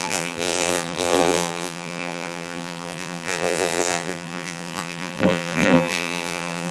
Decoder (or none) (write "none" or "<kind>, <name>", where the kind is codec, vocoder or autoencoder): vocoder, BigVGAN v2